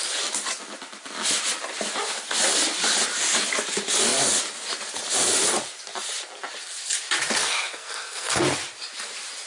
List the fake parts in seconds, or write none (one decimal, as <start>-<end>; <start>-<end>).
7.4-8.4